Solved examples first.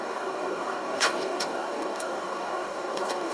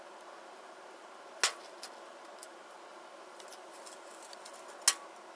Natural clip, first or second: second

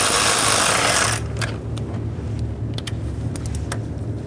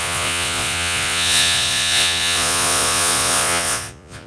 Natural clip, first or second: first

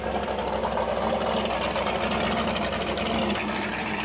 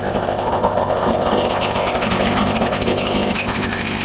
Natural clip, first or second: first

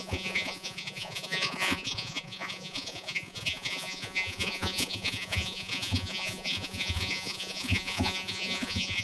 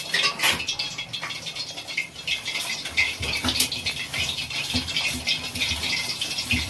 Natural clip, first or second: second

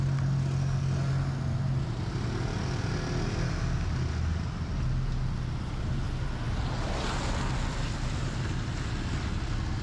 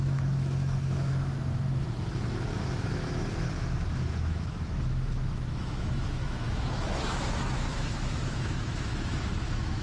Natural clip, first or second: first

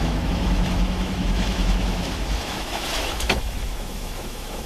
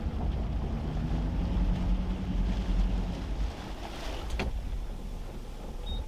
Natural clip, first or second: second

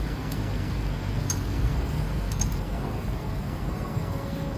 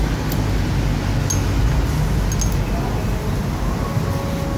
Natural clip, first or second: second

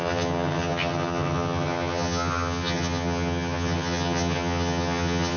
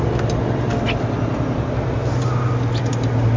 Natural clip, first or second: second